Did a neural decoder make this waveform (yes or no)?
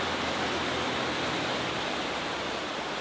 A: no